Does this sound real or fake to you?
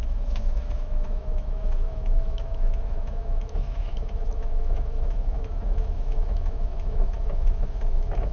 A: fake